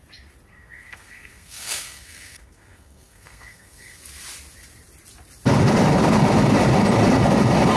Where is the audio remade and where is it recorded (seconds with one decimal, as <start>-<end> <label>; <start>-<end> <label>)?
0.0-0.5 recorded; 0.5-4.0 remade; 4.0-7.8 recorded